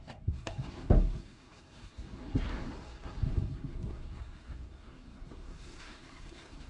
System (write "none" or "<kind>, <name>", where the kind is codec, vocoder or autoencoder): codec, SNAC